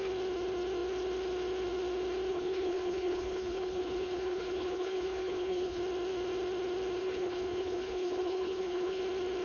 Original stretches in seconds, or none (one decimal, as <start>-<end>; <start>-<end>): 0.0-2.3; 5.8-7.0; 9.0-9.4